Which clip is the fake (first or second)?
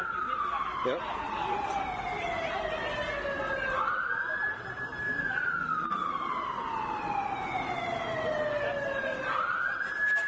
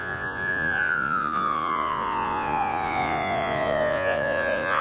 second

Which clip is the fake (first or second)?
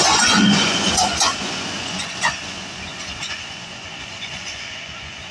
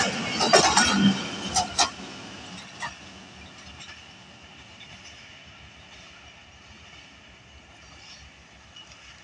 first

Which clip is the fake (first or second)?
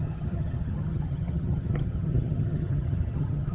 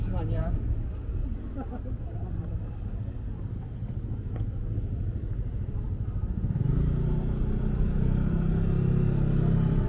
first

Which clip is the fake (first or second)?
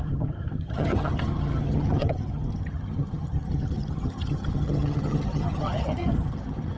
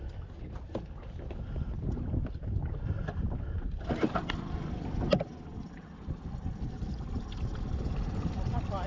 first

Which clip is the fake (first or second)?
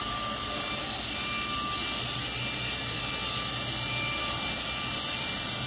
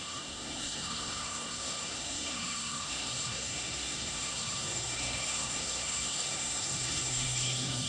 second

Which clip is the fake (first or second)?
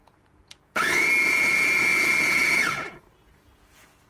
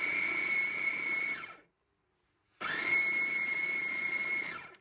first